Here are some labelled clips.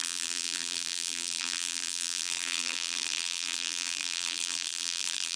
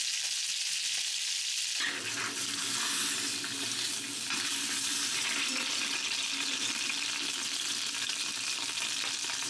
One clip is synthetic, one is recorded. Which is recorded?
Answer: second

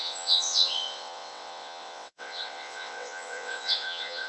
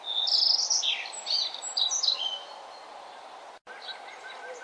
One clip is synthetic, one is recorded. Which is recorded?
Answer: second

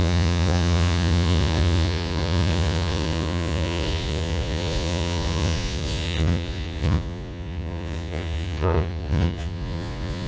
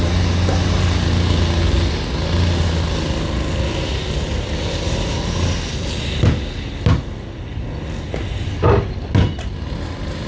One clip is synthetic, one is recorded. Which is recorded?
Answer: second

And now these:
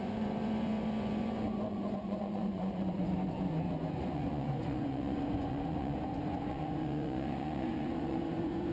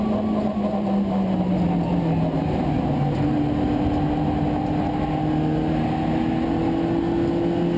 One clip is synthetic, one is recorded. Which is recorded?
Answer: second